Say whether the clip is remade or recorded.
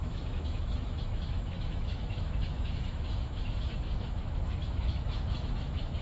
remade